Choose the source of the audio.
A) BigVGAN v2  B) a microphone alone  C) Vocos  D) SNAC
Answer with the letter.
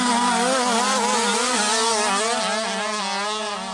B